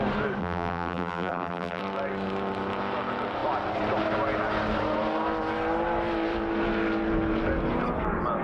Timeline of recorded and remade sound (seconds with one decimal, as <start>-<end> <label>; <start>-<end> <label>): 0.0-0.4 recorded; 0.4-1.8 remade; 1.8-8.4 recorded